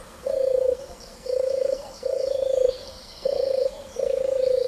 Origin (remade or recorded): remade